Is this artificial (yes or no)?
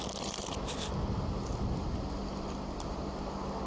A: no